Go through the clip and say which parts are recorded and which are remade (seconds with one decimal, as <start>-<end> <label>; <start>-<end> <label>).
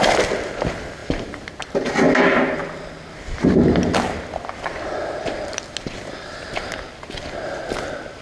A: 0.0-8.2 recorded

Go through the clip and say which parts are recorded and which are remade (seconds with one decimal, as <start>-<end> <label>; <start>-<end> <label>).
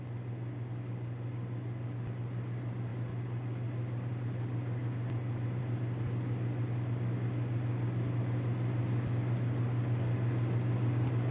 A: 0.0-11.3 recorded